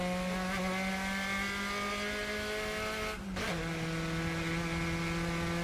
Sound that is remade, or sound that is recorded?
recorded